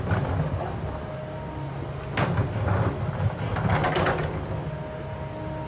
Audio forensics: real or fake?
real